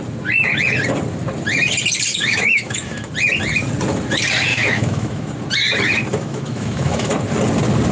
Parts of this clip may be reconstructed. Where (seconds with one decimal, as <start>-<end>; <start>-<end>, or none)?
2.1-3.1; 4.5-5.3; 6.1-7.1